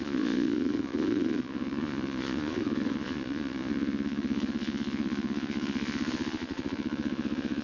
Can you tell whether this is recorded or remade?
remade